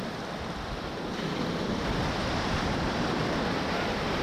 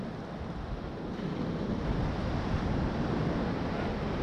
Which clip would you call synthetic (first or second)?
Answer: first